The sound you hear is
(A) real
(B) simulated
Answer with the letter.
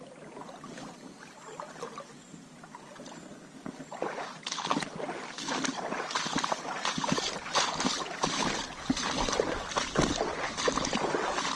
A